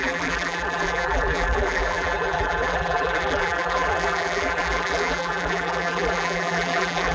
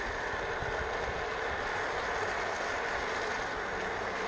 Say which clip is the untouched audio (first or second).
second